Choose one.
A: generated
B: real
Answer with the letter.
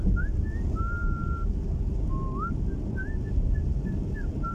B